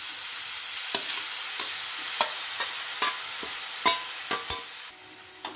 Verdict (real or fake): real